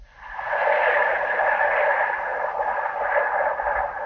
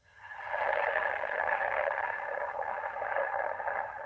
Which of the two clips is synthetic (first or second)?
second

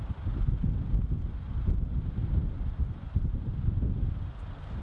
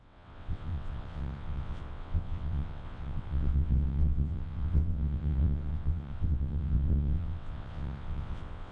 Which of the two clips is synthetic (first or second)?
second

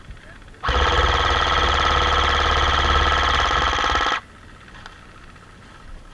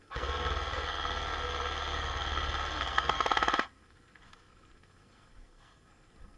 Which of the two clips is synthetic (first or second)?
second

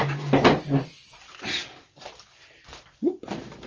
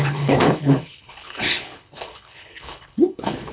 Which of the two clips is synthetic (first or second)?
second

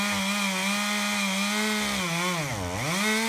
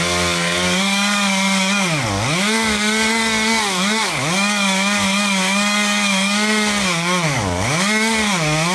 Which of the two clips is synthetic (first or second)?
second